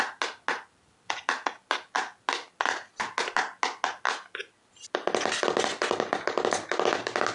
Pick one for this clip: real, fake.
real